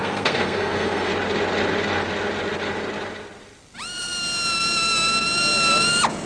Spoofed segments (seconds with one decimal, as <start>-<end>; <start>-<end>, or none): 0.0-1.1